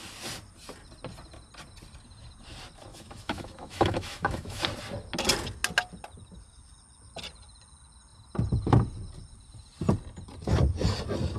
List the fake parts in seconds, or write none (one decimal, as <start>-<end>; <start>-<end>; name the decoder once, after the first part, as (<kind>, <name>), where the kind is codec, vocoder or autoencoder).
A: 2.9-4.6 (autoencoder, DAC-VAE)